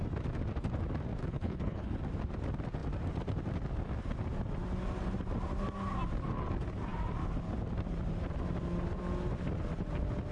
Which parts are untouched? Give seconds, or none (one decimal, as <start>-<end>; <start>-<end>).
0.0-1.2; 2.0-10.3